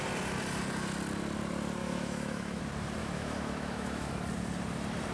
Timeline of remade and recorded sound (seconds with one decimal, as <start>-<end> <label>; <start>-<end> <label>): 0.0-1.8 recorded; 1.8-2.6 remade; 2.6-3.0 recorded; 3.0-4.1 remade; 4.1-5.1 recorded